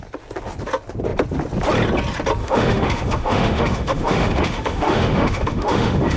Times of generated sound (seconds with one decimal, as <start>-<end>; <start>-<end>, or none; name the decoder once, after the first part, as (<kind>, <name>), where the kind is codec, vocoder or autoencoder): 2.4-6.2 (autoencoder, DAC-VAE)